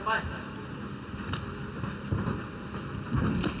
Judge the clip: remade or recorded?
recorded